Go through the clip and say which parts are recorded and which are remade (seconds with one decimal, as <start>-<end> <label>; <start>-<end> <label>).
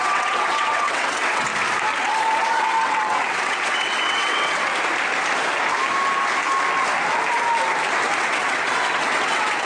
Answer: 0.0-1.5 remade; 1.5-2.0 recorded; 2.0-4.7 remade; 4.7-8.2 recorded; 8.2-9.7 remade